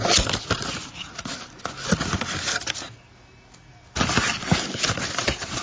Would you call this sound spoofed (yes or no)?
no